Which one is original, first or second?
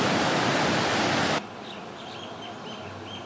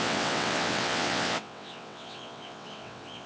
first